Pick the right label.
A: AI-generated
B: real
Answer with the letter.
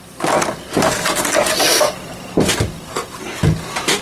B